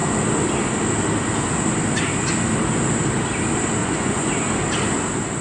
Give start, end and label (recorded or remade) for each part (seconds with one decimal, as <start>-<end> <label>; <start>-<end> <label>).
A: 0.0-3.8 recorded; 3.8-4.3 remade; 4.3-5.4 recorded